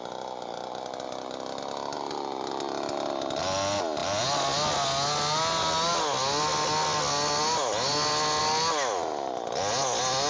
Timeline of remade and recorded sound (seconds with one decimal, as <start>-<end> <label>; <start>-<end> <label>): 0.0-10.3 recorded

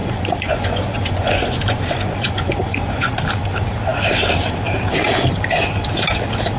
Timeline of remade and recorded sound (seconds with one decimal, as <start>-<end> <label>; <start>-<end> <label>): 0.0-3.1 remade; 3.1-6.6 recorded